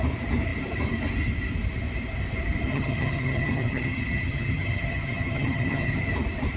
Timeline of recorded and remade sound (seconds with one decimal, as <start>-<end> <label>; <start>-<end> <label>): 0.0-2.7 recorded; 2.7-6.0 remade; 6.0-6.6 recorded